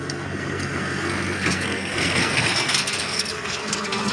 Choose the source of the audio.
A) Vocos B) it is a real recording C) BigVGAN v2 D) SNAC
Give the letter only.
D